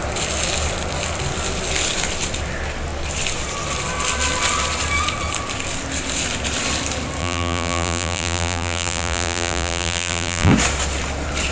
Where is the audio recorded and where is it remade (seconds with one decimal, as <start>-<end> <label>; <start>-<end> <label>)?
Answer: 0.0-7.2 recorded; 7.2-10.5 remade; 10.5-11.5 recorded